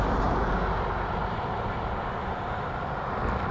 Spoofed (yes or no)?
no